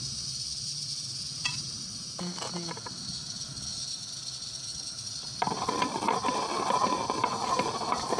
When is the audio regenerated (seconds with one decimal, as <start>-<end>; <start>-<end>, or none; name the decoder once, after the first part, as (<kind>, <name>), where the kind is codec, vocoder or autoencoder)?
none